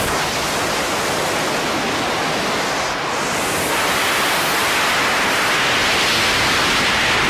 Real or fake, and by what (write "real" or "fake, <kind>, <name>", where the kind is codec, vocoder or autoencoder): real